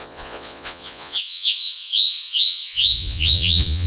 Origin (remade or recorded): remade